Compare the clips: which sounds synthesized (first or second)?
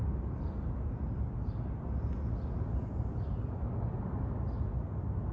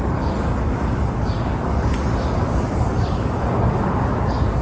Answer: second